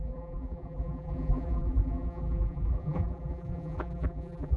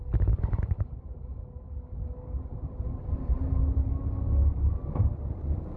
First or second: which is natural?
second